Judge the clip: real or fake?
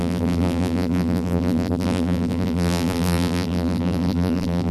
fake